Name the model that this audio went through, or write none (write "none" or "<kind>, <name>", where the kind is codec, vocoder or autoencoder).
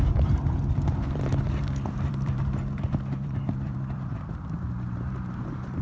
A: vocoder, BigVGAN v2